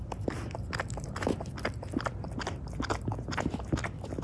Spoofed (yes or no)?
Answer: no